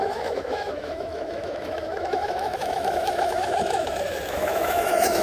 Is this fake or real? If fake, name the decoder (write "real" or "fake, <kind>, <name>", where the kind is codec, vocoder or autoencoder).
fake, autoencoder, DAC-VAE